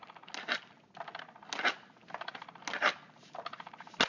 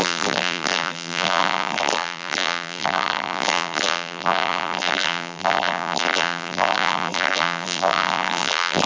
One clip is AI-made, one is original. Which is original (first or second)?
first